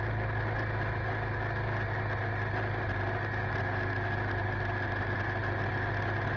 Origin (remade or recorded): recorded